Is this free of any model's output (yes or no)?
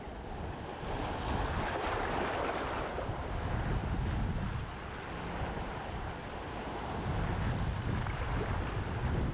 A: yes